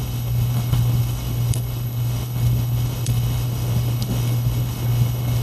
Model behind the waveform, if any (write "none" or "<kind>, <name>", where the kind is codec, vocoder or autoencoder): codec, HILCodec